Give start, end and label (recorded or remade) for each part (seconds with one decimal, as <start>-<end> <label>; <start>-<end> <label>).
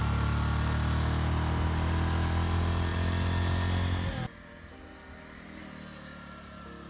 0.0-6.9 recorded